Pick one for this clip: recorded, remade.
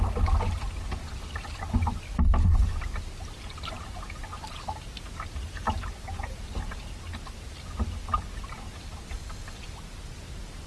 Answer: recorded